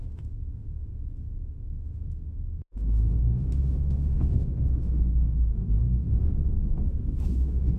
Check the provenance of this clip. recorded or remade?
remade